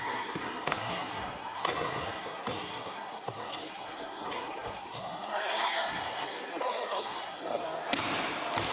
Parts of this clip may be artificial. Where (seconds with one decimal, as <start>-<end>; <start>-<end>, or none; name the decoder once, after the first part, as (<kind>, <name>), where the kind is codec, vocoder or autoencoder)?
0.0-7.6 (codec, SNAC)